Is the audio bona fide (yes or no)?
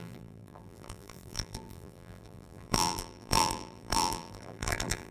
no